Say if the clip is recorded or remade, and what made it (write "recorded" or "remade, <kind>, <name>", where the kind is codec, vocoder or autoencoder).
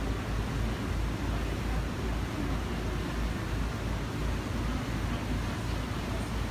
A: recorded